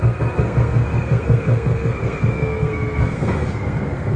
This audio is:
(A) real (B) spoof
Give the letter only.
B